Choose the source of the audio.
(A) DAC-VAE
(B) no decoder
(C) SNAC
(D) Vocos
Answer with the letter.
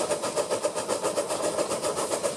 B